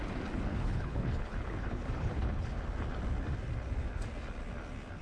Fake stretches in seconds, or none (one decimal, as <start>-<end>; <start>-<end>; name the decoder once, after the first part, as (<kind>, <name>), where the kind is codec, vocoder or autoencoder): 0.5-2.5 (codec, HILCodec)